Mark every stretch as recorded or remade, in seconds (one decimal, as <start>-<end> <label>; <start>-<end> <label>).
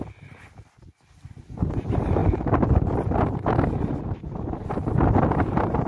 0.0-5.9 recorded